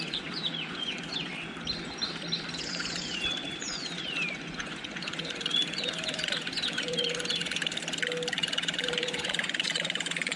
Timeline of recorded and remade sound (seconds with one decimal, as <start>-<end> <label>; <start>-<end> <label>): 0.0-1.3 remade; 1.3-2.5 recorded; 2.5-7.6 remade; 7.6-8.3 recorded; 8.3-10.4 remade